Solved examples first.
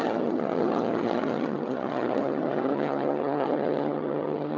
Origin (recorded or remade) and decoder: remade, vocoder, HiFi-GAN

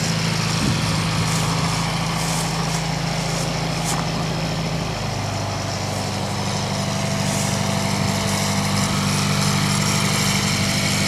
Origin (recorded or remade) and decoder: recorded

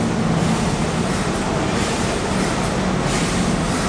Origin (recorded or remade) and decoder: recorded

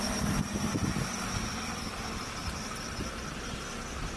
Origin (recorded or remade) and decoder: recorded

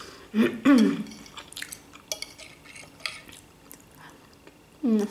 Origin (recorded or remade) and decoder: recorded